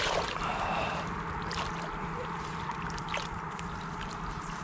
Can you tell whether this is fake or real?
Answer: real